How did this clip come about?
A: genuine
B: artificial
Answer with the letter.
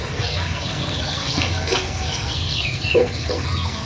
B